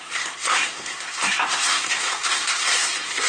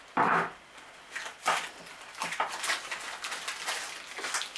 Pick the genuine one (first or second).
second